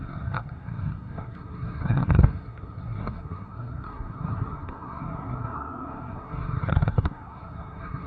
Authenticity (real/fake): fake